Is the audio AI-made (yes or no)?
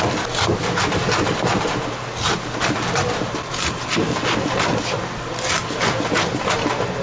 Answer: no